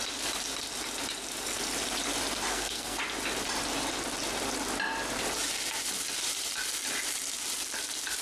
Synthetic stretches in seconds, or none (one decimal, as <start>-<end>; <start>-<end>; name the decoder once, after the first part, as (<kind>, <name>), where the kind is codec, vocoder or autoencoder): 2.5-3.0 (codec, SNAC)